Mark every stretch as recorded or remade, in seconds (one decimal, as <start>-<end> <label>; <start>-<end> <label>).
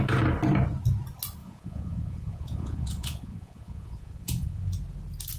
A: 0.0-1.4 recorded; 1.4-4.6 remade; 4.6-5.4 recorded